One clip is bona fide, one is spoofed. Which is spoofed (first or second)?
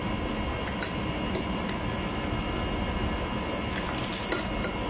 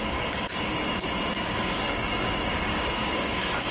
second